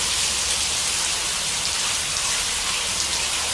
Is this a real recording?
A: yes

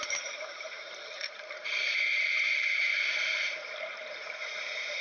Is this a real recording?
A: no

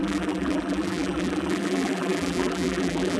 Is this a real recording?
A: no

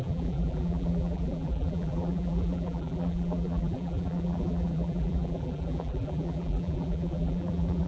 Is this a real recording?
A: no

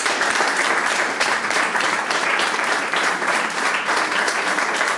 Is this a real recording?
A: no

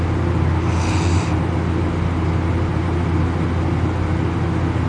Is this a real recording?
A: yes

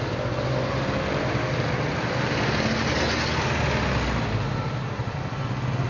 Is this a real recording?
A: yes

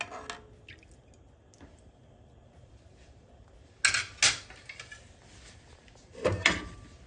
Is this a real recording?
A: yes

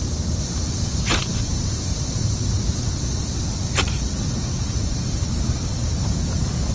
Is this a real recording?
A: no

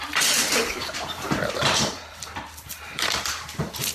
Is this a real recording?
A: no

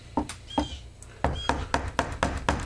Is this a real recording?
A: yes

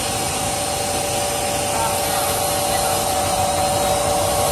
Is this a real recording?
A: yes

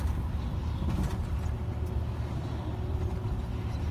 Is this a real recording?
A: yes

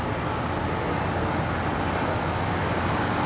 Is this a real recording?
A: yes